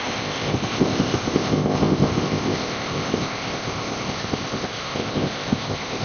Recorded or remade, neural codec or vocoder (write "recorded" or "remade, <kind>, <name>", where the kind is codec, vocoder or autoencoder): remade, codec, ZipCodec